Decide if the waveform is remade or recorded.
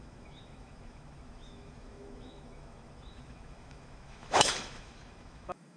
remade